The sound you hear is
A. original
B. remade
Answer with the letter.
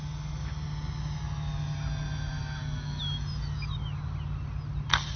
A